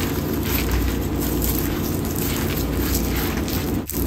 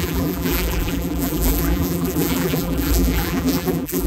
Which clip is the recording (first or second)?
first